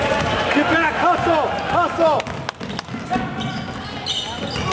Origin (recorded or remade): recorded